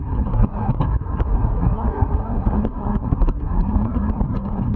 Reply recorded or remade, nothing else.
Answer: remade